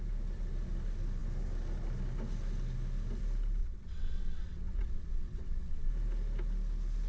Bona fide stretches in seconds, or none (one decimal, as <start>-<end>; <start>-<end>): 0.0-3.6; 5.9-7.1